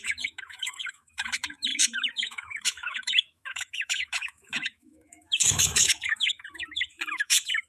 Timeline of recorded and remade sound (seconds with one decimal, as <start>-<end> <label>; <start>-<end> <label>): 0.0-7.7 remade